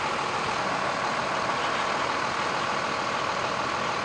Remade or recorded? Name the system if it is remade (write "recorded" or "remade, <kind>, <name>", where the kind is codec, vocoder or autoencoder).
recorded